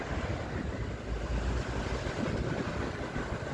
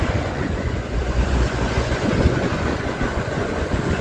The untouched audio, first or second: first